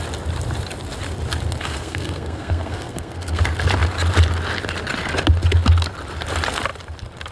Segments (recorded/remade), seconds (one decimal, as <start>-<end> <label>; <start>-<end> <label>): 0.0-1.6 recorded; 1.6-3.4 remade; 3.4-7.3 recorded